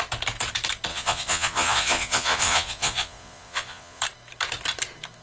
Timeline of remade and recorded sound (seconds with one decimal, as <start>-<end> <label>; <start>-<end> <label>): 0.0-0.9 recorded; 0.9-4.0 remade; 4.0-5.2 recorded